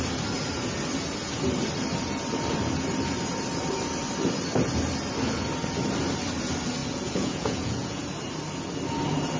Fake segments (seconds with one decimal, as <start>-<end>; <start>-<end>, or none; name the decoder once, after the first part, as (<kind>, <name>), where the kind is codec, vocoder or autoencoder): 6.8-8.0 (vocoder, Vocos)